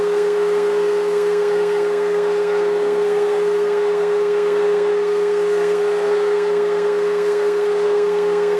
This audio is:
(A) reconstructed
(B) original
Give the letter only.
A